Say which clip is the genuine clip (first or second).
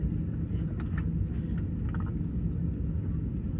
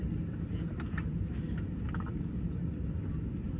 first